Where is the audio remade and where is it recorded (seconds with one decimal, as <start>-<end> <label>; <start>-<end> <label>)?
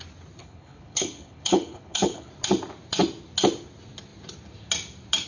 0.0-0.4 recorded; 0.4-2.3 remade; 2.3-5.3 recorded